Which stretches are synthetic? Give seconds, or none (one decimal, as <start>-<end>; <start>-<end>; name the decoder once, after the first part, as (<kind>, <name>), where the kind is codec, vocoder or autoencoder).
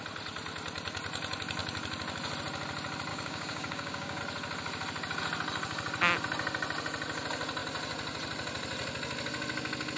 3.1-4.2 (codec, DAC)